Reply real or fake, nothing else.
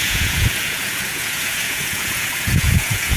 fake